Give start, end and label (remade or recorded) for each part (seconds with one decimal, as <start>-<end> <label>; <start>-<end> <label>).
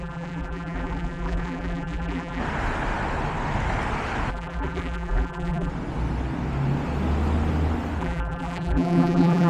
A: 0.0-2.4 remade; 2.4-4.3 recorded; 4.3-5.7 remade; 5.7-8.0 recorded; 8.0-9.5 remade